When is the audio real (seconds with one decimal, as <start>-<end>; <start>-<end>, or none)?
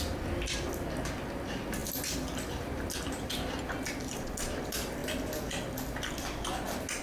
0.0-7.0